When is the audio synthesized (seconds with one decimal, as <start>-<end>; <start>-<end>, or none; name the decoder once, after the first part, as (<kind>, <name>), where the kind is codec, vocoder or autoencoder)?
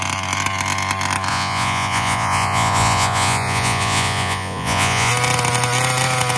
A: 1.3-5.1 (vocoder, Vocos)